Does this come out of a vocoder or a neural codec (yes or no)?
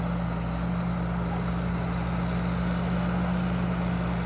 no